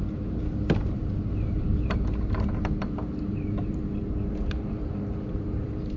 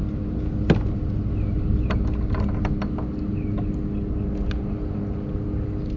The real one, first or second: second